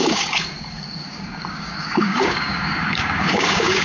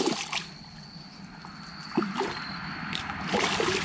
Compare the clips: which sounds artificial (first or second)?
first